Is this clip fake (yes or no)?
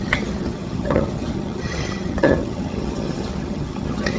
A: yes